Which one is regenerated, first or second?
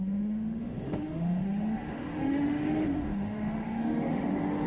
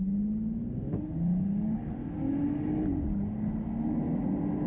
first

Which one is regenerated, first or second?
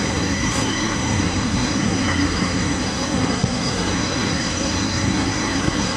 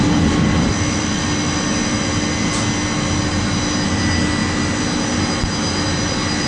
first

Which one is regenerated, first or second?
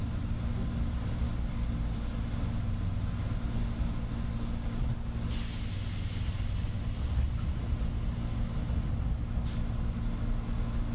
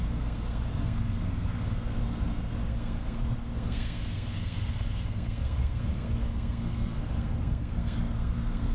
second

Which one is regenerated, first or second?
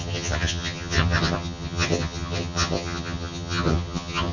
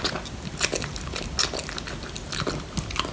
first